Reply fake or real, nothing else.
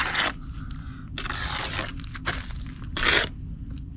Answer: real